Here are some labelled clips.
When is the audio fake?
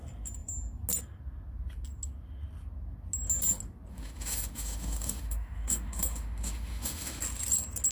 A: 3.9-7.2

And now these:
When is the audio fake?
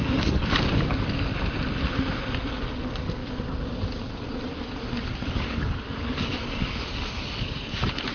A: 0.0-1.3; 2.8-3.2; 5.3-8.1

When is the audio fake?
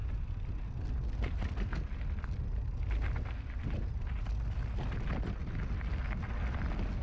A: 0.0-4.2; 5.4-6.2